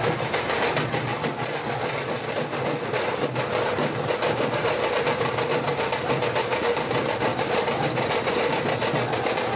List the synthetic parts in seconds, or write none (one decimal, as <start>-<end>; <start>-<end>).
7.3-8.6